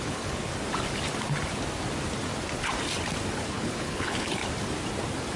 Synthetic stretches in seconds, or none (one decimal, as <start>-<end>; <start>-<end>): 0.0-0.5; 3.5-4.4